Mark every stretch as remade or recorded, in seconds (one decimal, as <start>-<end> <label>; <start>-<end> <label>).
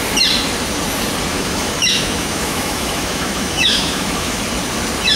0.0-1.3 recorded; 1.3-4.4 remade; 4.4-5.2 recorded